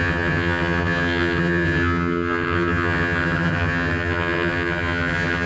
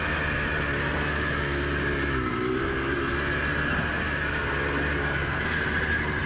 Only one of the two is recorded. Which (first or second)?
second